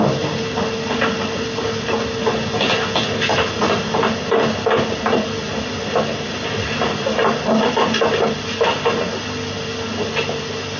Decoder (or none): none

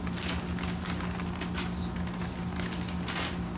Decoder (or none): none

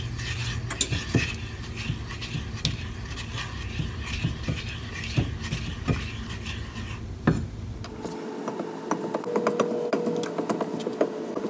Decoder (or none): none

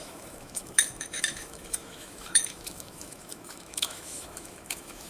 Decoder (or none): autoencoder, DAC-VAE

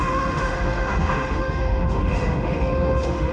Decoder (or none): autoencoder, DAC-VAE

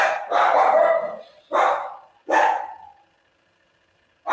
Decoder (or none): none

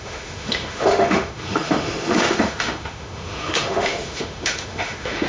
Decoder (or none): autoencoder, DAC-VAE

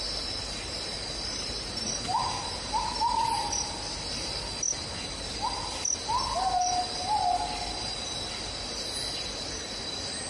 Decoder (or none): none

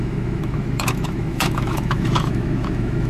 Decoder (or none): autoencoder, DAC-VAE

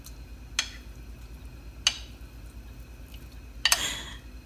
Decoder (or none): none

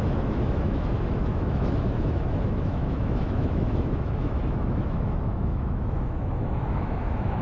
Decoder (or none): autoencoder, DAC-VAE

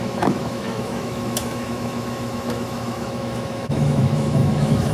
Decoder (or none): autoencoder, DAC-VAE